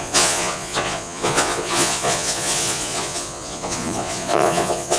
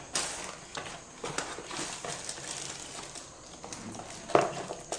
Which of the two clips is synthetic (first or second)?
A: first